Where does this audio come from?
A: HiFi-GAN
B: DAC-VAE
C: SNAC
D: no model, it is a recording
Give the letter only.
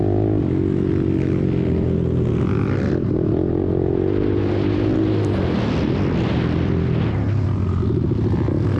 D